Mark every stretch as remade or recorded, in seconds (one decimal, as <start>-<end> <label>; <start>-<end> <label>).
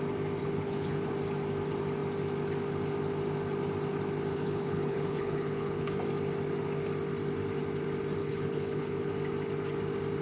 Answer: 0.0-0.4 recorded; 0.4-1.1 remade; 1.1-4.3 recorded; 4.3-6.0 remade; 6.0-8.2 recorded; 8.2-9.1 remade; 9.1-10.2 recorded